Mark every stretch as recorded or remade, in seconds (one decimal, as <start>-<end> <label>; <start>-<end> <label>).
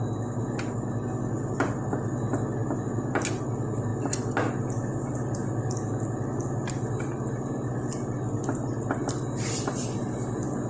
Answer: 0.0-10.7 recorded